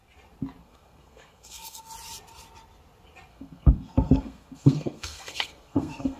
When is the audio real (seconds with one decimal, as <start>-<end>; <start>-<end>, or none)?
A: 0.0-0.6; 1.9-3.3